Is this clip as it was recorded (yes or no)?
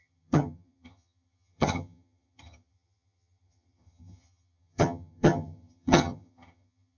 no